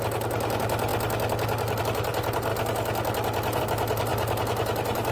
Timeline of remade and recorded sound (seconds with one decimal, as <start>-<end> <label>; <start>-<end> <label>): 0.0-5.1 recorded